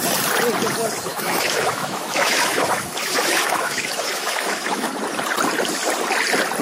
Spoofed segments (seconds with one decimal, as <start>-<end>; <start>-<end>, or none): 1.1-4.9